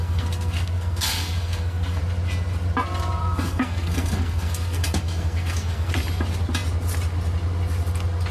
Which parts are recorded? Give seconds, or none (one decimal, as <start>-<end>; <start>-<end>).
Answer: 2.0-3.2; 5.9-8.3